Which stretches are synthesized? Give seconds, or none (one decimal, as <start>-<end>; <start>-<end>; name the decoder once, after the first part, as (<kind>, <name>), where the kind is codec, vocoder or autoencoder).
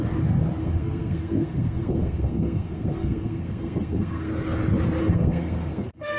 0.6-4.3 (codec, SNAC); 5.0-6.2